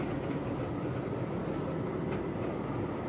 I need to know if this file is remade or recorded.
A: recorded